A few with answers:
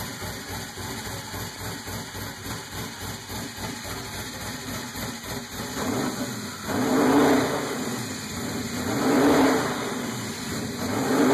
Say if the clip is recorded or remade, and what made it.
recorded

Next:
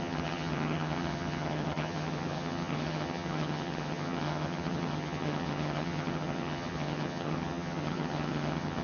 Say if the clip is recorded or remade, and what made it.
remade, vocoder, HiFi-GAN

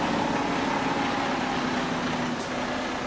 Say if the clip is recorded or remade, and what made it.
recorded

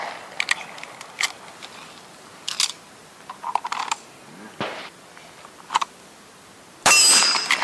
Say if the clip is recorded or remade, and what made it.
recorded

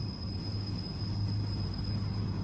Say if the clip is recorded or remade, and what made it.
recorded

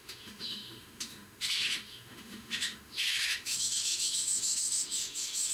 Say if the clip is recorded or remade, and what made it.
remade, autoencoder, DAC-VAE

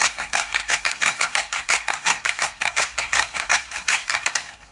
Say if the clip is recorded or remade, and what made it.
remade, codec, SNAC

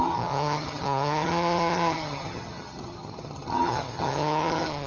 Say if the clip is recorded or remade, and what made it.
remade, vocoder, HiFi-GAN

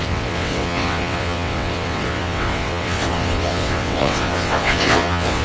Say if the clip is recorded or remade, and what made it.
remade, vocoder, WaveNeXt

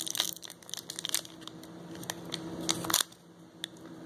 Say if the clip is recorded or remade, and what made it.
recorded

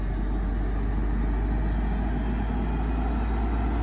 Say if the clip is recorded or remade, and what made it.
recorded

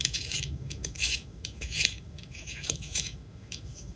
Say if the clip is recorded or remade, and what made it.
remade, autoencoder, DAC-VAE